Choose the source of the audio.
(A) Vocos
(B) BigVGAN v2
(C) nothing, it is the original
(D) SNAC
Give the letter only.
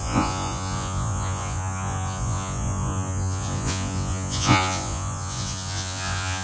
A